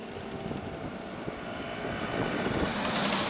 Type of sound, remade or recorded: recorded